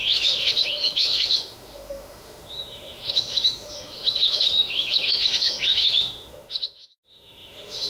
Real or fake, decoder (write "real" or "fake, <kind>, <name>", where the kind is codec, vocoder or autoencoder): fake, autoencoder, DAC-VAE